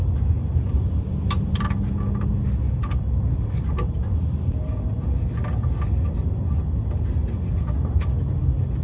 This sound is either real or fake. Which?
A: real